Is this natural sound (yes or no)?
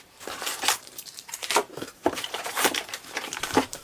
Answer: no